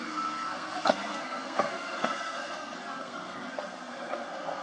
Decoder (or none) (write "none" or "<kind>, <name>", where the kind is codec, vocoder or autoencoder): codec, SNAC